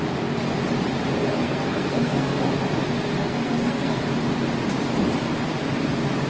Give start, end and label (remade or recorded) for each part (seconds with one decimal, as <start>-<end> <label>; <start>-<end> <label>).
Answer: 0.0-1.3 recorded; 1.3-2.6 remade; 2.6-3.2 recorded; 3.2-4.0 remade; 4.0-6.3 recorded